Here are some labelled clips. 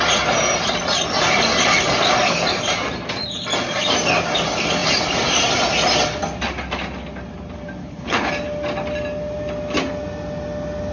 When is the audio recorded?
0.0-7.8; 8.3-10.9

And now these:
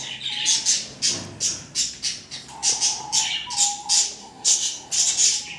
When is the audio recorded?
0.0-4.2; 4.9-5.6

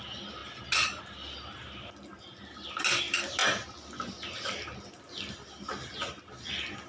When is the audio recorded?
0.0-6.9

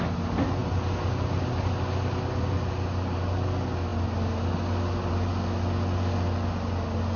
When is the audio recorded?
0.0-7.2